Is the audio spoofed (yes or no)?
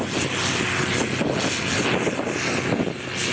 no